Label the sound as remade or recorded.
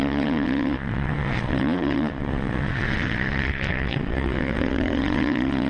remade